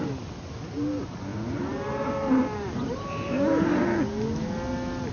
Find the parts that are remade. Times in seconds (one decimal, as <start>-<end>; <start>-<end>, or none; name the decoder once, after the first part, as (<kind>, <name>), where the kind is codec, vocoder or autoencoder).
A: 1.3-3.8 (vocoder, BigVGAN v2)